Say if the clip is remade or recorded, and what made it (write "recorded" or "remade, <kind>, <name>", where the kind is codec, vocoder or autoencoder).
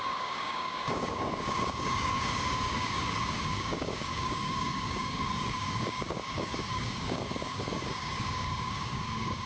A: remade, codec, DAC